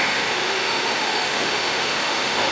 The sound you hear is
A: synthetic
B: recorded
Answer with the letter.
A